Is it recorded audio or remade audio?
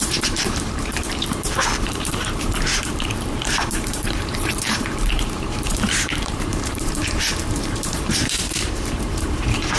remade